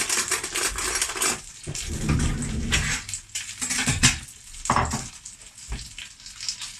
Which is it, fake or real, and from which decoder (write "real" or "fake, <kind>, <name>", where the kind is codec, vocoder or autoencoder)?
real